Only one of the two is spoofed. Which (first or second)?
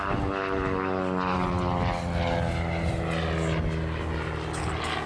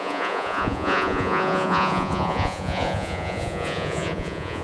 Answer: second